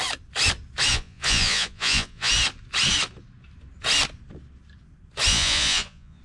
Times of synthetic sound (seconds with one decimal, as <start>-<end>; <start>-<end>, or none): 0.9-2.3; 5.3-6.2